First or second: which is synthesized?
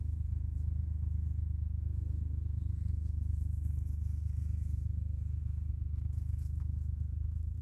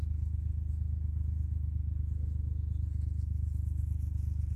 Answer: first